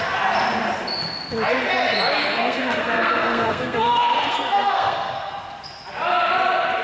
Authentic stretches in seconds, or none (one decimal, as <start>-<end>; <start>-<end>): 0.0-2.2; 5.3-6.8